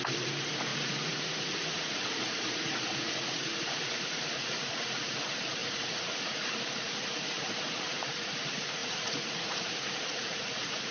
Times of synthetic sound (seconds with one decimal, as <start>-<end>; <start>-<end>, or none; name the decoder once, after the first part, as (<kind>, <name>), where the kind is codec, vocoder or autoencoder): 0.0-10.9 (vocoder, Vocos)